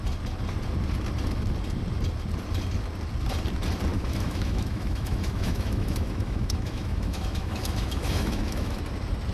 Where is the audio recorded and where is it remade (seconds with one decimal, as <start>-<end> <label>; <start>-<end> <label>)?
0.0-3.9 recorded; 3.9-8.8 remade; 8.8-9.3 recorded